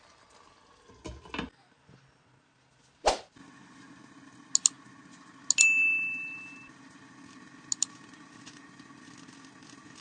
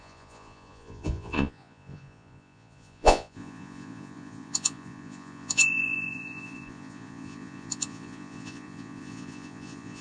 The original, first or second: first